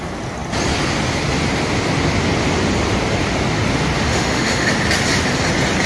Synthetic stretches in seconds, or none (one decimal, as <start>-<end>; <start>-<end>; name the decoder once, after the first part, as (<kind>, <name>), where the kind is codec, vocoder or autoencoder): 4.1-4.7 (autoencoder, DAC-VAE)